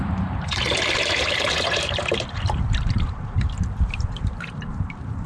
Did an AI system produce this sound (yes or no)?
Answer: yes